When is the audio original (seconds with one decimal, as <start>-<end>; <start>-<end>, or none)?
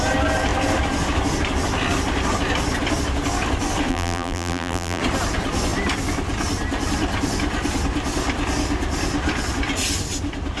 0.0-3.9; 5.0-10.6